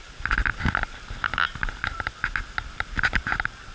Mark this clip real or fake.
real